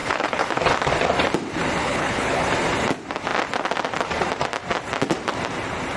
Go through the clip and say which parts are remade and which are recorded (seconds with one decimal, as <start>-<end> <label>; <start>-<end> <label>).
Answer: 0.0-0.6 remade; 0.6-1.8 recorded; 1.8-2.4 remade; 2.4-6.0 recorded